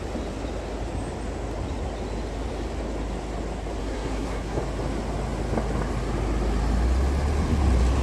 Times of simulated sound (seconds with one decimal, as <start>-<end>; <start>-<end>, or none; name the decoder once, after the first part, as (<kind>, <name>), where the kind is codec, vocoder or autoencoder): 3.8-4.6 (codec, SNAC)